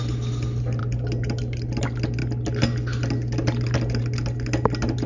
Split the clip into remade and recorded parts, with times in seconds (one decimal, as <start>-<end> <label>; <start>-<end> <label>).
0.0-5.1 recorded